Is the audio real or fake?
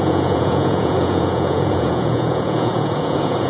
fake